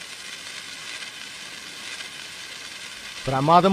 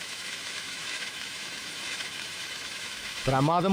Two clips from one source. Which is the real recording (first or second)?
first